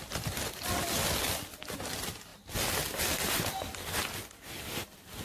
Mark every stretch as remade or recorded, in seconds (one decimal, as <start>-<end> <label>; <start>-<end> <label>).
0.0-5.2 recorded

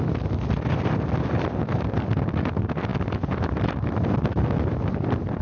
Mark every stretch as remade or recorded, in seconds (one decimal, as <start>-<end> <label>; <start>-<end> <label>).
0.0-2.9 recorded; 2.9-5.4 remade

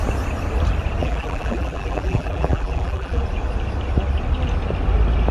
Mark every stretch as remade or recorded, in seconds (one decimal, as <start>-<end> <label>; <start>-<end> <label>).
0.0-1.0 recorded; 1.0-3.2 remade; 3.2-5.3 recorded

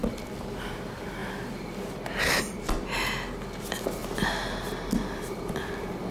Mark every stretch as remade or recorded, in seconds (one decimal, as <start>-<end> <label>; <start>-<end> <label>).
0.0-1.2 recorded; 1.2-2.2 remade; 2.2-6.1 recorded

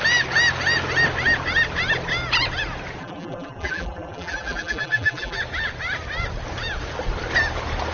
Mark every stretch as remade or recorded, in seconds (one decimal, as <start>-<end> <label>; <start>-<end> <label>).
0.0-3.0 recorded; 3.0-5.4 remade; 5.4-7.9 recorded